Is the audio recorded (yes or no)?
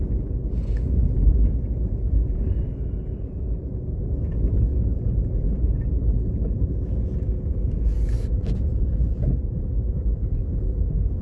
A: yes